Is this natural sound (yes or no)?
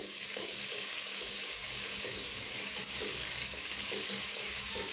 no